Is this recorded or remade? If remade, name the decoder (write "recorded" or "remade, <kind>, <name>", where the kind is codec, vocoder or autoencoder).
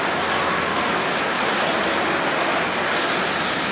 recorded